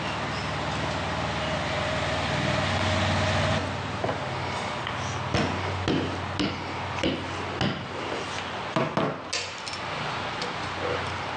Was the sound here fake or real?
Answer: real